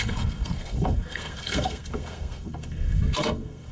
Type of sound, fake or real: fake